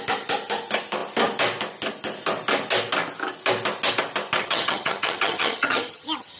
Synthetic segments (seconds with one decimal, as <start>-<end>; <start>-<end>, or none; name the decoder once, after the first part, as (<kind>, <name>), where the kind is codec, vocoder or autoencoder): 4.4-6.4 (vocoder, HiFi-GAN)